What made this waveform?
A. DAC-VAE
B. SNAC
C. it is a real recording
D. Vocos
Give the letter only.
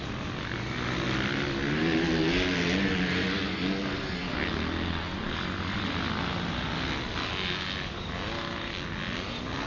C